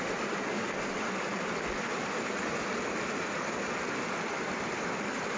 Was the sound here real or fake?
real